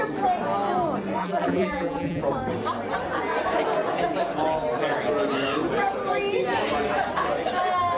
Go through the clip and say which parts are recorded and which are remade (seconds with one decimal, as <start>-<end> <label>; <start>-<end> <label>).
0.0-1.2 recorded; 1.2-2.2 remade; 2.2-8.0 recorded